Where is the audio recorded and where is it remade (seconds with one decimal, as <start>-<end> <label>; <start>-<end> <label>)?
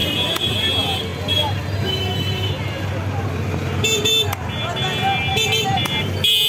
0.0-0.5 remade; 0.5-5.3 recorded; 5.3-5.9 remade; 5.9-6.5 recorded